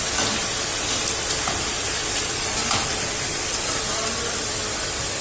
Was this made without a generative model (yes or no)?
yes